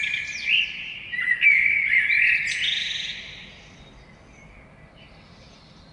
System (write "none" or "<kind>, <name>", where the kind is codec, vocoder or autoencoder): none